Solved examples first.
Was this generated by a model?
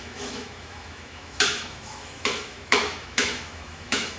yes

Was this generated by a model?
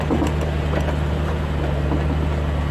no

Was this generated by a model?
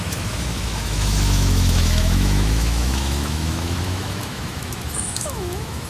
yes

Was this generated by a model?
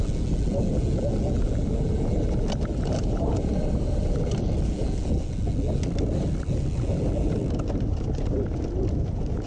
no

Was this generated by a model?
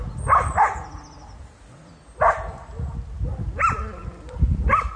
no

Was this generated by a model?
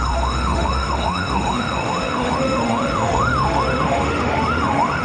yes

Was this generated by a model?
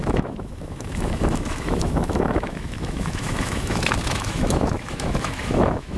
yes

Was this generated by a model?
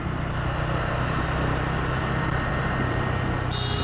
no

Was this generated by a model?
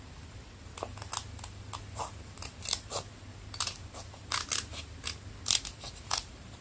no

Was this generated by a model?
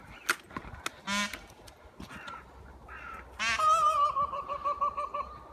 no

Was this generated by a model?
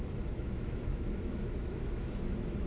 yes